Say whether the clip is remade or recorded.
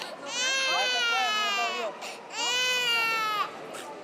recorded